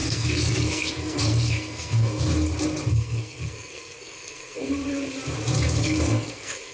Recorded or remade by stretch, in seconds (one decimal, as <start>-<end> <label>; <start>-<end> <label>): 0.0-2.3 remade; 2.3-2.9 recorded; 2.9-4.8 remade; 4.8-5.8 recorded; 5.8-6.7 remade

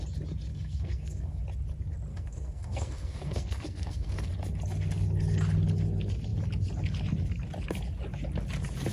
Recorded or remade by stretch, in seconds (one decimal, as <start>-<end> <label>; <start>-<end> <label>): 0.0-0.5 recorded; 0.5-1.4 remade; 1.4-2.1 recorded; 2.1-4.3 remade; 4.3-8.9 recorded

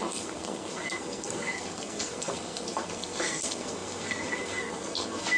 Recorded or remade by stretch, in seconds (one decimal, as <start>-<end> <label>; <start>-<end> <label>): 0.0-5.4 remade

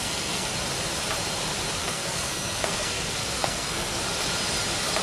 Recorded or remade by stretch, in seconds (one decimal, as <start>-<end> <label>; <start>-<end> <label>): 0.0-0.5 remade; 0.5-1.8 recorded; 1.8-4.0 remade; 4.0-5.0 recorded

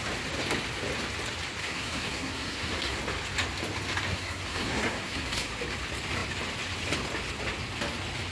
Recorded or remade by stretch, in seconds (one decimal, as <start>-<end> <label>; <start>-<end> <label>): 0.0-1.6 recorded; 1.6-3.0 remade; 3.0-4.1 recorded; 4.1-5.5 remade; 5.5-8.3 recorded

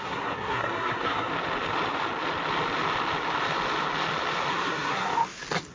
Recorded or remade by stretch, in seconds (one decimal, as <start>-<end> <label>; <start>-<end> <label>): 0.0-1.3 remade; 1.3-4.5 recorded; 4.5-5.1 remade; 5.1-5.7 recorded

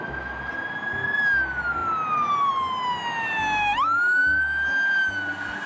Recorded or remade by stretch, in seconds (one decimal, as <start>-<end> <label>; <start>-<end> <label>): 0.0-5.7 recorded

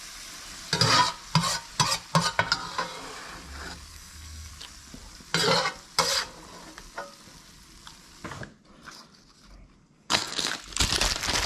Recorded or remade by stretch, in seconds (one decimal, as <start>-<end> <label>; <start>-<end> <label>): 0.0-3.9 recorded; 3.9-4.5 remade; 4.5-9.8 recorded; 9.8-10.5 remade; 10.5-11.5 recorded